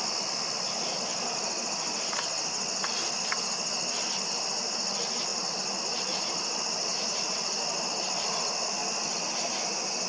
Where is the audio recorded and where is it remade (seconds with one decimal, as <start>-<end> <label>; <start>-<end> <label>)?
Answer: 0.0-10.1 recorded